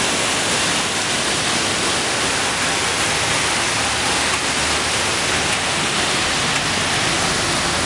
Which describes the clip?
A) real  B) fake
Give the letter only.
A